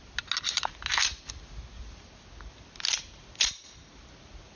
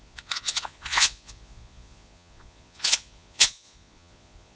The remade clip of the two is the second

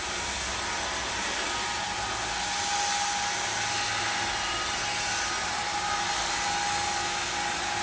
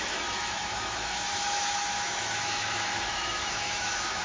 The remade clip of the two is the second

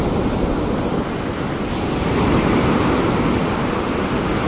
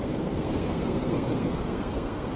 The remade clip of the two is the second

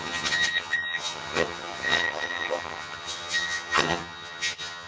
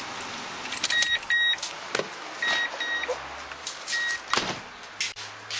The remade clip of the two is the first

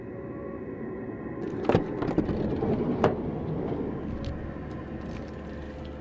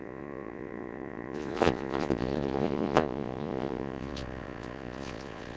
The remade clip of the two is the second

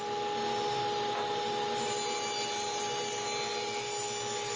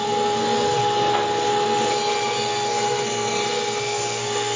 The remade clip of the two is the second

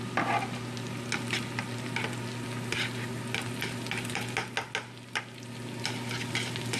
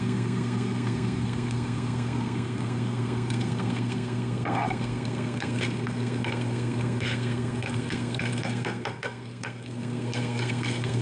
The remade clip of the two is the second